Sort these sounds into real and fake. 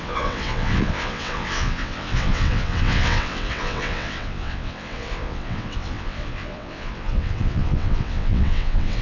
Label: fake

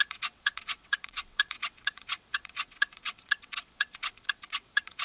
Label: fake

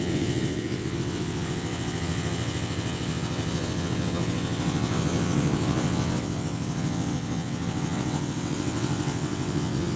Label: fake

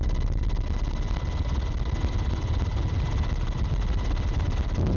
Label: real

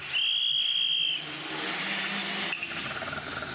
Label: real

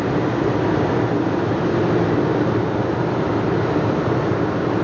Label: real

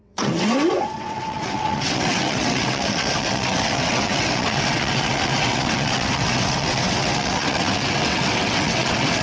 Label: fake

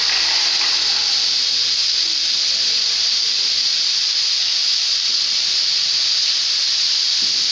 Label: real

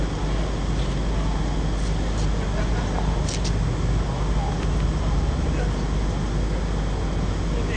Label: real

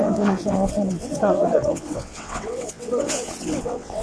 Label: fake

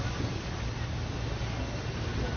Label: real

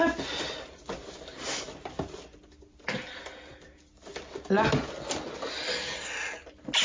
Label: real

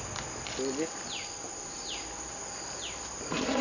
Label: real